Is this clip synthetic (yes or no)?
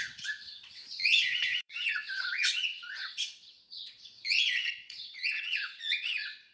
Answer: yes